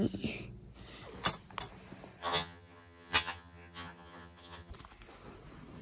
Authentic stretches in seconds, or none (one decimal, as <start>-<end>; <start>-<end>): 0.0-2.2; 4.7-5.8